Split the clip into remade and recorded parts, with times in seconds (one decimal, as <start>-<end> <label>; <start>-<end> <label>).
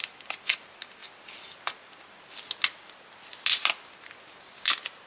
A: 0.0-5.1 recorded